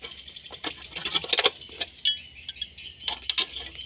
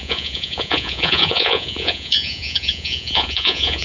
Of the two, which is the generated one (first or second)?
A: second